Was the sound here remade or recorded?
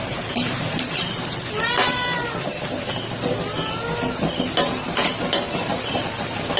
recorded